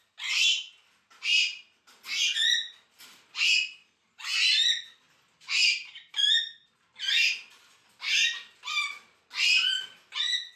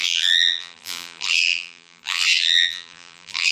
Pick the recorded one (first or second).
first